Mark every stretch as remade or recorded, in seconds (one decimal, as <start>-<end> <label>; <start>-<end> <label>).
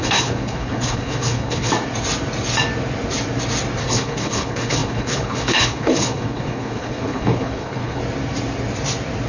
0.0-1.7 remade; 1.7-3.8 recorded; 3.8-8.0 remade; 8.0-9.3 recorded